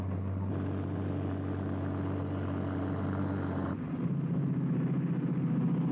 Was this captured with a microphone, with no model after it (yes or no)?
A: yes